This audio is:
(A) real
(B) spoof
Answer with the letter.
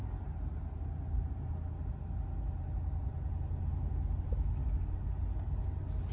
A